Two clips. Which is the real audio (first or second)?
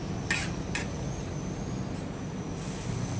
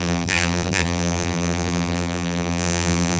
first